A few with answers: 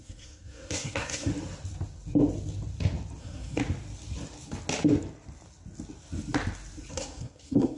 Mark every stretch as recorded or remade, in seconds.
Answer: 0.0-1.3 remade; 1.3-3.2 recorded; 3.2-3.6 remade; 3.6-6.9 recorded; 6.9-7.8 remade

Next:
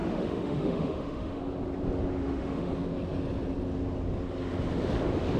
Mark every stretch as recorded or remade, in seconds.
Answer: 0.0-1.4 remade; 1.4-2.2 recorded; 2.2-2.7 remade; 2.7-5.4 recorded

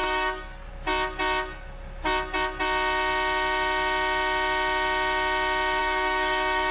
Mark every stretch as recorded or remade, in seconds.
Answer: 0.0-0.7 remade; 0.7-5.8 recorded; 5.8-6.7 remade

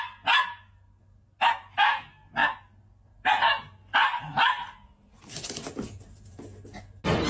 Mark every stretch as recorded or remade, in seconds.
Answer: 0.0-7.3 recorded

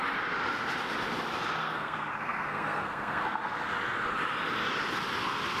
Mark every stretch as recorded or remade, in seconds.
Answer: 0.0-1.6 recorded; 1.6-3.4 remade; 3.4-5.6 recorded

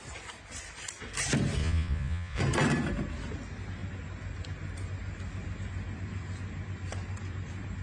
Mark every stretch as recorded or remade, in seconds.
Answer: 0.0-1.6 recorded; 1.6-2.4 remade; 2.4-7.8 recorded

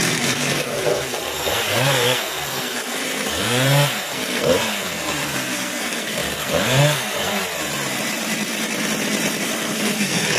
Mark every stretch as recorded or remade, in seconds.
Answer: 0.0-7.4 remade; 7.4-9.4 recorded; 9.4-10.4 remade

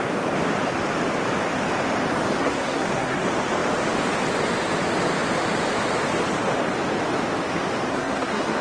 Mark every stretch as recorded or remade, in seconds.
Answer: 0.0-2.4 recorded; 2.4-3.2 remade; 3.2-7.9 recorded; 7.9-8.6 remade